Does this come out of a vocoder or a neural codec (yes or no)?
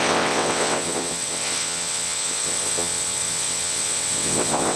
yes